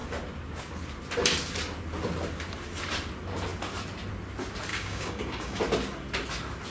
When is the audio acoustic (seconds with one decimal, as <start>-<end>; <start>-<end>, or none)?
0.0-4.7; 5.6-6.7